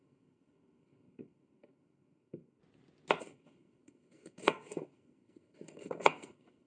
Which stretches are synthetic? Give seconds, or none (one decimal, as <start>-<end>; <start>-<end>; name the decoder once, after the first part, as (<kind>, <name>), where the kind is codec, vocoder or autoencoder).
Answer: 0.0-2.6 (codec, SNAC); 3.2-6.7